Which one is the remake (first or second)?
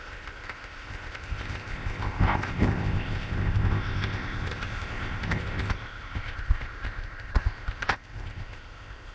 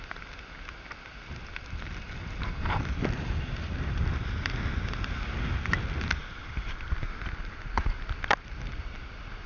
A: first